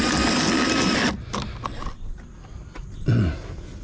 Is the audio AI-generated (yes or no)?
no